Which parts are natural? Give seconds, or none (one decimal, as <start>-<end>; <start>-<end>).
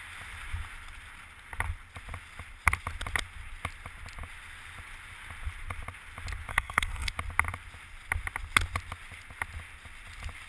0.0-6.5; 7.1-10.5